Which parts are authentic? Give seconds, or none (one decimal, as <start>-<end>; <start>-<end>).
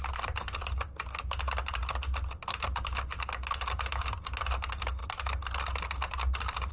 0.0-6.7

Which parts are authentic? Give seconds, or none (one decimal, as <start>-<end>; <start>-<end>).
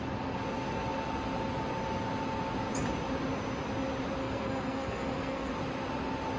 0.0-4.2; 5.5-6.4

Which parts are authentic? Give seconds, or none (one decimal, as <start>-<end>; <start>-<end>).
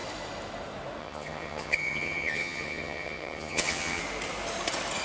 0.0-1.0; 4.0-5.0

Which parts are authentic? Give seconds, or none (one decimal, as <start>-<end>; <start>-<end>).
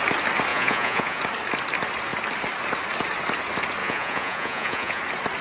0.0-0.5; 1.2-3.8; 5.0-5.4